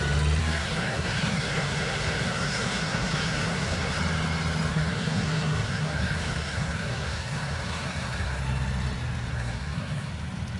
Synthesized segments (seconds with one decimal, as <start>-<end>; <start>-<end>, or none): 0.4-4.0; 4.7-8.4; 9.3-10.1